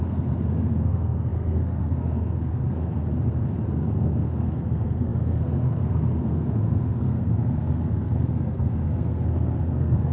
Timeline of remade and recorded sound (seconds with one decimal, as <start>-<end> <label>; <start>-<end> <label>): 0.0-3.0 remade; 3.0-3.7 recorded; 3.7-10.1 remade